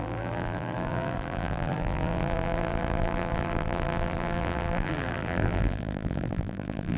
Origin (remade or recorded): remade